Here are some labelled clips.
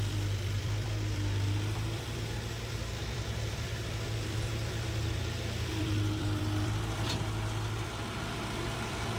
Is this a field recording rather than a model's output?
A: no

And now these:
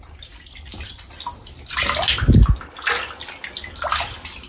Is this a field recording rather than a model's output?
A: yes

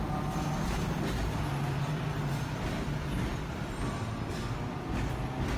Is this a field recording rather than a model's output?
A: yes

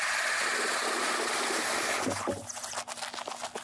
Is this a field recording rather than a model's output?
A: yes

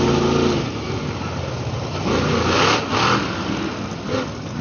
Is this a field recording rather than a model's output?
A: yes